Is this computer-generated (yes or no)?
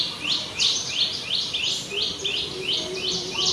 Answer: no